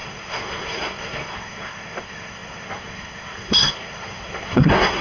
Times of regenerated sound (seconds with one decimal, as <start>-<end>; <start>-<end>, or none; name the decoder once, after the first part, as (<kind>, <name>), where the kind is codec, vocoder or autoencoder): 0.0-5.0 (codec, SNAC)